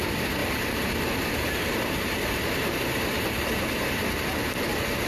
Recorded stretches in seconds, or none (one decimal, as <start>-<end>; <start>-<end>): 0.0-0.4; 3.5-5.1